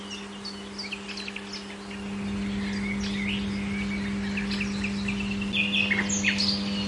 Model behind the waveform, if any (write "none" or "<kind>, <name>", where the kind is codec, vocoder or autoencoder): none